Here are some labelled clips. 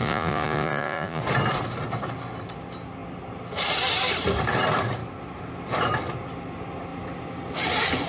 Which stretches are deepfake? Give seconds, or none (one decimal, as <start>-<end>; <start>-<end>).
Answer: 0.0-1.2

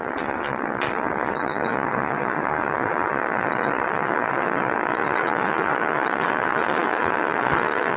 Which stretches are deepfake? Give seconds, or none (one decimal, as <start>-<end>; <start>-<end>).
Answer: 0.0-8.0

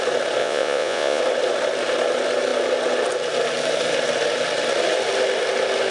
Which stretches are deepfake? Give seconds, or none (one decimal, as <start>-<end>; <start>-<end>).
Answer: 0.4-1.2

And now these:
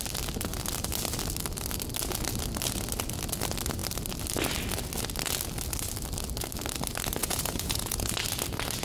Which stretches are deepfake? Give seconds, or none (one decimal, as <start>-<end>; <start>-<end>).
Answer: 7.2-8.1

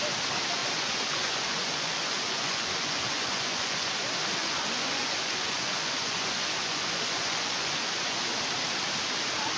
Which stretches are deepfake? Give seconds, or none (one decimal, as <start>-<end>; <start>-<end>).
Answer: 0.6-3.9; 4.4-8.4

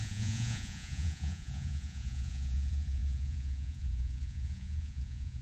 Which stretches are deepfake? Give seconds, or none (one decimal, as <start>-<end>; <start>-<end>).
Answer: 0.0-5.4

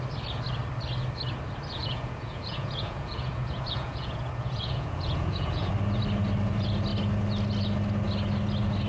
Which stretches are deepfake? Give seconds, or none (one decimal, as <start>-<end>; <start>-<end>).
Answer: 1.8-5.7